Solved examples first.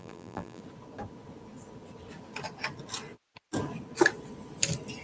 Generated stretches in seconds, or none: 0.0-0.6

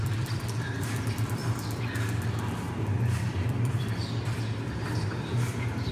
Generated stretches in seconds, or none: 0.0-1.4; 3.0-5.9

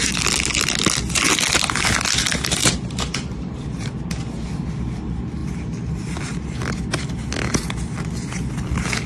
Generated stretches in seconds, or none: 2.6-4.1

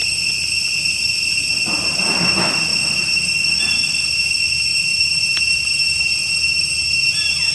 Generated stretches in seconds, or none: 0.8-1.5; 4.7-7.5

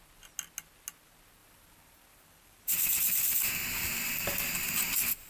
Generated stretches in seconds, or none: 1.4-3.5